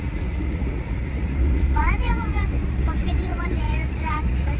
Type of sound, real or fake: fake